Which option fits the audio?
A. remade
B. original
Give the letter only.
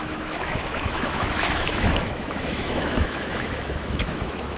A